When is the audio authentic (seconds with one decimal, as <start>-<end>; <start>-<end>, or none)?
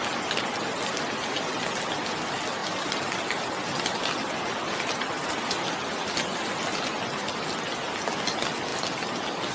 0.0-9.5